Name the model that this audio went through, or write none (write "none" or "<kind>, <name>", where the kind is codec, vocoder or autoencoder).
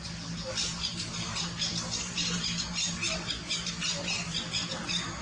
none